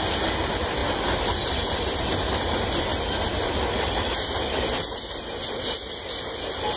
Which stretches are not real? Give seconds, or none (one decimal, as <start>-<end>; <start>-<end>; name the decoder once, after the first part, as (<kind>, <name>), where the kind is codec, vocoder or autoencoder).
none